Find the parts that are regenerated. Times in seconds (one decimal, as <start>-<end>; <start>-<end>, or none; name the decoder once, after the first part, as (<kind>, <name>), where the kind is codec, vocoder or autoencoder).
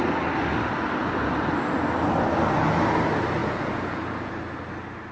3.4-4.3 (vocoder, Vocos)